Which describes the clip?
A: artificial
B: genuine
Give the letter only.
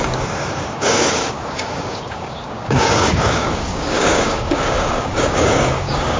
A